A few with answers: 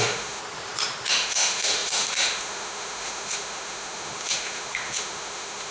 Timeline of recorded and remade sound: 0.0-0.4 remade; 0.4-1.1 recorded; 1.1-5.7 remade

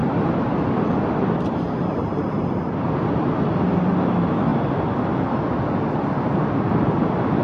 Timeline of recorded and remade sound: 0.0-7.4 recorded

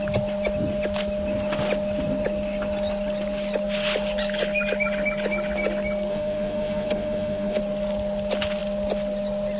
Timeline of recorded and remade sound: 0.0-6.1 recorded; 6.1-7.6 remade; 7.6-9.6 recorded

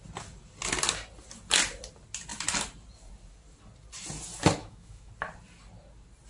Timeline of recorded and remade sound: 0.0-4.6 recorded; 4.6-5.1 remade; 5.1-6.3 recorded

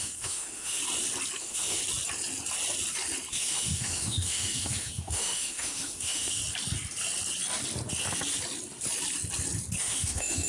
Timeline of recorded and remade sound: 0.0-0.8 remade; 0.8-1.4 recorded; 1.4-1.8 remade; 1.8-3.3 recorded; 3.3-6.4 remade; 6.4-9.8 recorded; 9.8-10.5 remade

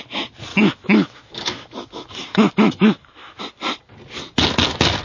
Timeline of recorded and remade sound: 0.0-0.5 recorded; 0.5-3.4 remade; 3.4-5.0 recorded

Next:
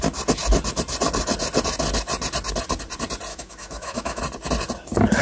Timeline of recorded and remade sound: 0.0-3.3 recorded; 3.3-4.2 remade; 4.2-5.2 recorded

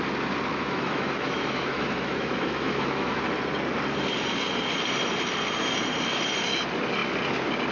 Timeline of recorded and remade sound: 0.0-0.5 recorded; 0.5-3.2 remade; 3.2-7.7 recorded